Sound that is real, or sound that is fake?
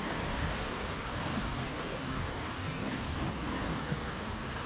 fake